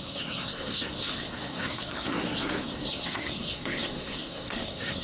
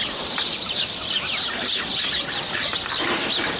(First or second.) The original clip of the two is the second